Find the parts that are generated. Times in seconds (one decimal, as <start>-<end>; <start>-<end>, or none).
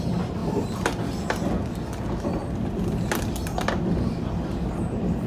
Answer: none